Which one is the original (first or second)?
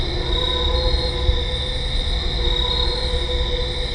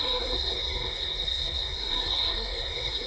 first